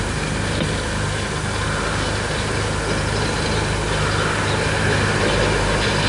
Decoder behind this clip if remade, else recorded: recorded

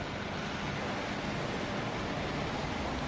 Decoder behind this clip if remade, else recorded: recorded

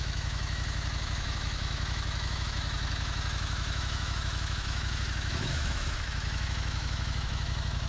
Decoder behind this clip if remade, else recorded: remade, autoencoder, DAC-VAE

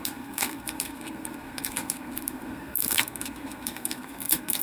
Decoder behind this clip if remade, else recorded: remade, codec, SNAC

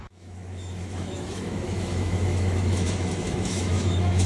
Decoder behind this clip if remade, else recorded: remade, autoencoder, DAC-VAE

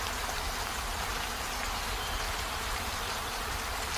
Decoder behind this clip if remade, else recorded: remade, vocoder, BigVGAN v2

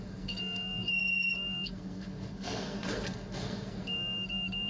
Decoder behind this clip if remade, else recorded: remade, codec, SNAC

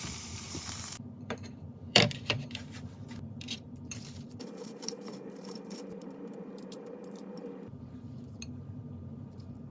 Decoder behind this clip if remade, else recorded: remade, vocoder, BigVGAN v2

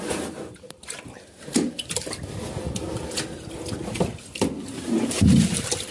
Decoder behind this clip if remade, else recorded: recorded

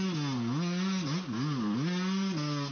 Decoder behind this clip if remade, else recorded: recorded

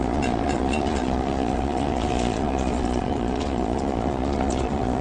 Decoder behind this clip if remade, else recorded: remade, vocoder, Vocos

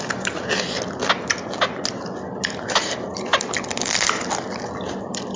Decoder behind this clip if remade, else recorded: recorded